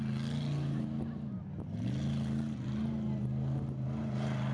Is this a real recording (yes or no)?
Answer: yes